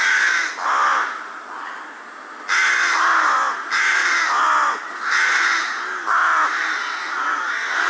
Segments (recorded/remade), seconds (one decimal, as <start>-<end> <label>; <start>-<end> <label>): 0.0-7.9 recorded